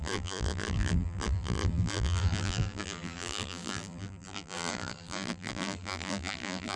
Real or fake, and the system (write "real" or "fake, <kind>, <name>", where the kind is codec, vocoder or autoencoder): fake, vocoder, BigVGAN v2